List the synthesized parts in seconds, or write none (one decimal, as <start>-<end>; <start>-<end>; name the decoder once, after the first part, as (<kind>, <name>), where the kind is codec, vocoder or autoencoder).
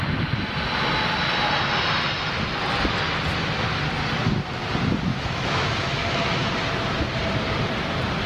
5.1-6.5 (autoencoder, DAC-VAE)